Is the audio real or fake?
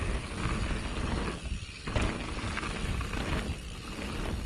real